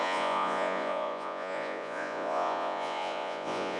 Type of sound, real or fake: fake